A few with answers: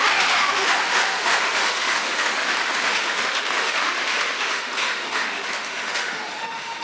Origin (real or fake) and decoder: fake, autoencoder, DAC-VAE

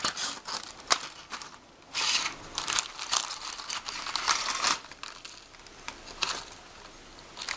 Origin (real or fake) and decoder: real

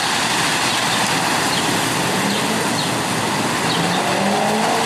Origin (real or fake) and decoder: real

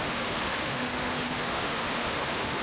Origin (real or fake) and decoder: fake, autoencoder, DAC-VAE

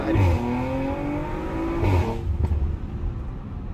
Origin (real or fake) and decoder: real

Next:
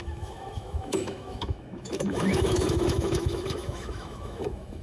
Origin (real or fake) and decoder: fake, autoencoder, DAC-VAE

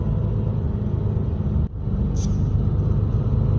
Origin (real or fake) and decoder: real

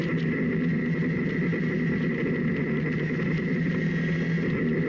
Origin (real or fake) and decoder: real